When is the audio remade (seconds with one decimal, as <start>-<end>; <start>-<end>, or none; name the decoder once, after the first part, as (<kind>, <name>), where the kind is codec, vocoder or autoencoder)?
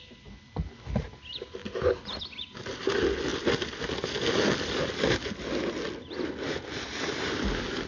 none